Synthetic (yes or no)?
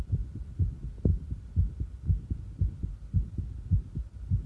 no